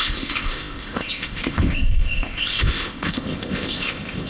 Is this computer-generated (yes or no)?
yes